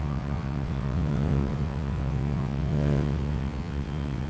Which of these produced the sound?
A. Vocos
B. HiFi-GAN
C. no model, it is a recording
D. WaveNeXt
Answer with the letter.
D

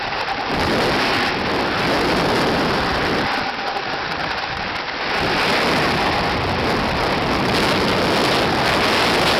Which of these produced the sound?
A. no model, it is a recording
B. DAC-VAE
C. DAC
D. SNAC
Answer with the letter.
A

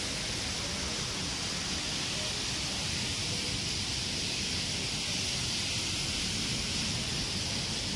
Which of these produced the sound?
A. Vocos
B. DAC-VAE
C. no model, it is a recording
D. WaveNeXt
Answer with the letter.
C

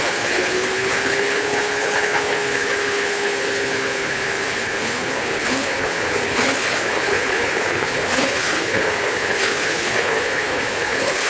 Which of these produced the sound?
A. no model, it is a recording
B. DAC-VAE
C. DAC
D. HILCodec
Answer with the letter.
D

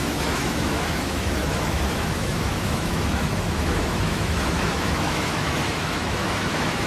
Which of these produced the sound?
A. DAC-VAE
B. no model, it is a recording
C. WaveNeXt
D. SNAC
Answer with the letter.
A